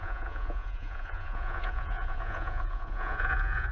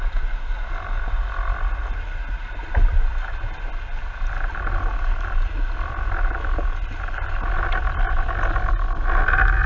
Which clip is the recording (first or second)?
second